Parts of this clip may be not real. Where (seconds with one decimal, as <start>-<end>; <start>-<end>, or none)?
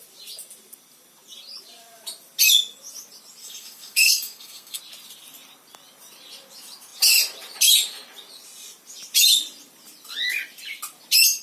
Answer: 3.4-4.8